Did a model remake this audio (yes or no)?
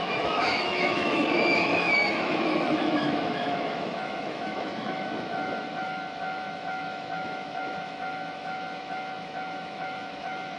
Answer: yes